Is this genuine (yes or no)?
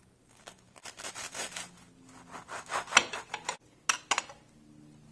yes